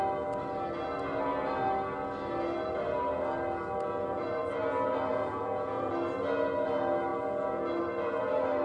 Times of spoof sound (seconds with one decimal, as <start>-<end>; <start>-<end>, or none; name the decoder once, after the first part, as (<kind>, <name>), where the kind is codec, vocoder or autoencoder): 5.1-5.9 (vocoder, Vocos)